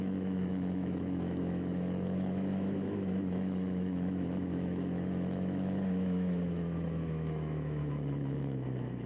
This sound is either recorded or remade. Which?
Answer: remade